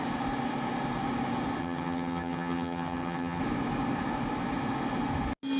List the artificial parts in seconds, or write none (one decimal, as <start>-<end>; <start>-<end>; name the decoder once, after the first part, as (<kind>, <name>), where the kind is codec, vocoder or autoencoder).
1.6-3.4 (vocoder, HiFi-GAN)